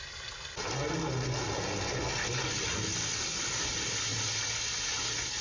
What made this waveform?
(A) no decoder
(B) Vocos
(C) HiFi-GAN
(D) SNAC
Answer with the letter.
A